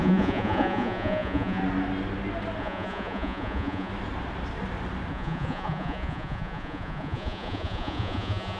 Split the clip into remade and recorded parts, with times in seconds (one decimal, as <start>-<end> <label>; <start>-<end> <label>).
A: 0.0-1.6 remade; 1.6-2.6 recorded; 2.6-3.9 remade; 3.9-5.1 recorded; 5.1-8.6 remade